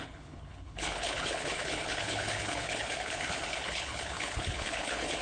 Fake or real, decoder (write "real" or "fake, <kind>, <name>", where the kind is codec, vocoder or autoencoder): fake, codec, HILCodec